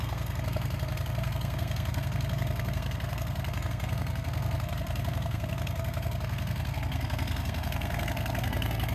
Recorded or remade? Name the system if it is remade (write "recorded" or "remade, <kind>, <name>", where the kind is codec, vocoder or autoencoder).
remade, codec, SNAC